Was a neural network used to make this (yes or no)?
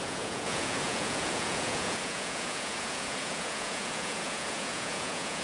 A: yes